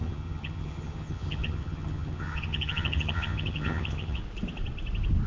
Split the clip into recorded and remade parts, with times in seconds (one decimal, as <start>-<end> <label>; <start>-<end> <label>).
0.0-4.2 remade; 4.2-5.3 recorded